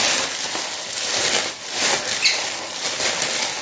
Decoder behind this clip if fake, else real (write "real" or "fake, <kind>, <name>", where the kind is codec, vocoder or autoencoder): real